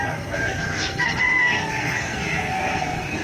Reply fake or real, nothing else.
fake